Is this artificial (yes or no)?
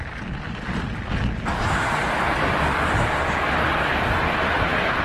no